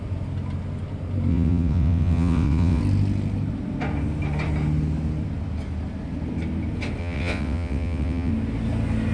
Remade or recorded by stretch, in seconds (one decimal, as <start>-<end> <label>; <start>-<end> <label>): 0.0-1.3 recorded; 1.3-2.8 remade; 2.8-7.0 recorded; 7.0-8.3 remade; 8.3-9.1 recorded